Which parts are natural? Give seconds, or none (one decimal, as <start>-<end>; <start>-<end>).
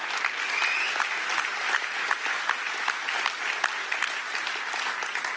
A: 0.0-5.4